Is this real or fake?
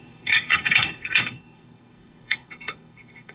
fake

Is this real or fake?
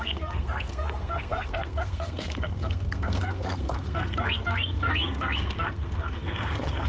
fake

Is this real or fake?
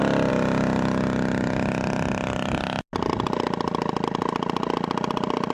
real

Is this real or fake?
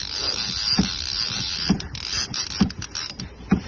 real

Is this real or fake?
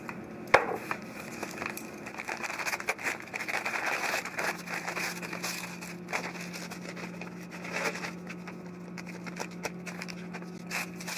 real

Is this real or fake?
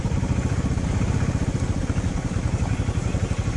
real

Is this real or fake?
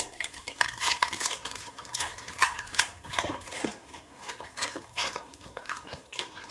fake